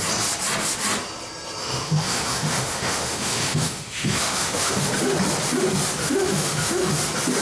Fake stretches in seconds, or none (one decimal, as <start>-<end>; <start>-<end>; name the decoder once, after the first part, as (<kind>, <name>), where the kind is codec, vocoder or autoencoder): 1.6-4.9 (autoencoder, DAC-VAE); 6.0-7.0